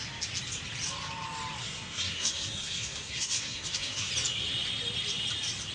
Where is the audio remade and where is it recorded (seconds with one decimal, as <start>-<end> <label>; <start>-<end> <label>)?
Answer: 0.0-1.6 recorded; 1.6-4.1 remade; 4.1-5.7 recorded